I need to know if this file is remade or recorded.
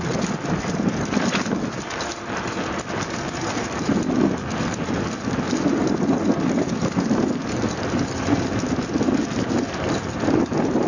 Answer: recorded